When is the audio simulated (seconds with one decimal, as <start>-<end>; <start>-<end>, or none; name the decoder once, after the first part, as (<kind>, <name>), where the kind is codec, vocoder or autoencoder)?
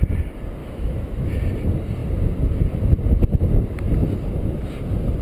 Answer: 0.6-1.3 (autoencoder, DAC-VAE)